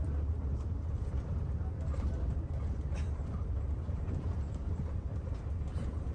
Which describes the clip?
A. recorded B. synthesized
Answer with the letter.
B